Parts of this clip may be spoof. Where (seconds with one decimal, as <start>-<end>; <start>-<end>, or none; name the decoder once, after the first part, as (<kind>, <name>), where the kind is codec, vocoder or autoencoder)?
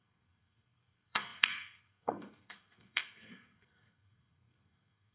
0.0-5.1 (codec, SNAC)